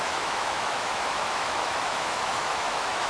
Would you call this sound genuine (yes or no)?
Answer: no